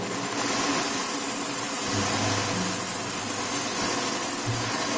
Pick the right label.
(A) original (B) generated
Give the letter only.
A